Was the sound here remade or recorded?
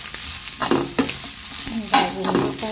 recorded